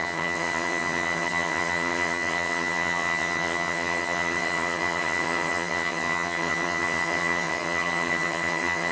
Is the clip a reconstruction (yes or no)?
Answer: yes